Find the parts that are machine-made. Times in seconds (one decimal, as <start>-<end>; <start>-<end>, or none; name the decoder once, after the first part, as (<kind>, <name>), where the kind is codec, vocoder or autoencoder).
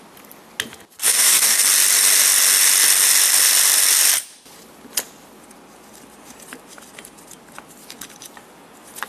1.0-1.6 (codec, DAC)